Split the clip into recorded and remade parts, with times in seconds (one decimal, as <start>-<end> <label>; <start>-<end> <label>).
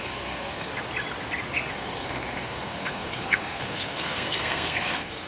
0.0-0.7 remade; 0.7-1.7 recorded; 1.7-5.3 remade